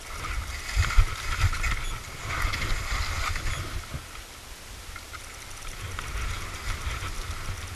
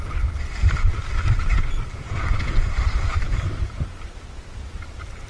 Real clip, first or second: first